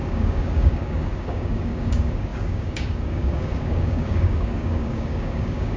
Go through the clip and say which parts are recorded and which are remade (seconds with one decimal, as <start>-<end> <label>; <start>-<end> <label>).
0.0-5.8 remade